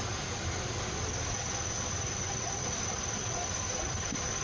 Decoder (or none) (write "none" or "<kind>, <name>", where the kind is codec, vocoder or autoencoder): none